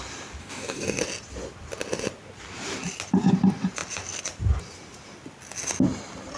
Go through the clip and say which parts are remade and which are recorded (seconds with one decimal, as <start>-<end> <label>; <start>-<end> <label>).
0.0-0.4 recorded; 0.4-1.0 remade; 1.0-6.4 recorded